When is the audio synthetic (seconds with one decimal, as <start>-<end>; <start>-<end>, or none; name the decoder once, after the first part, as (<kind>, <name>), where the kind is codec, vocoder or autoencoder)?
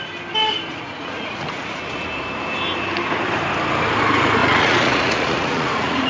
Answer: 0.7-2.1 (vocoder, Vocos); 4.4-6.1